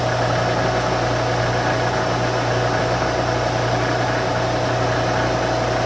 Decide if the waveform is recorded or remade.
recorded